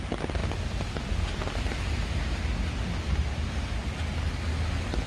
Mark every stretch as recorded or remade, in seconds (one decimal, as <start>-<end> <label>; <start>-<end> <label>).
0.0-5.1 recorded